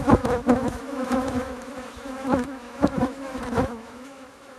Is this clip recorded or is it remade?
remade